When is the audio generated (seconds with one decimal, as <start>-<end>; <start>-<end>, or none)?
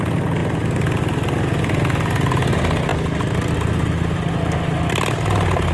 none